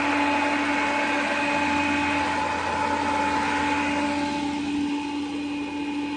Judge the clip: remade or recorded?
recorded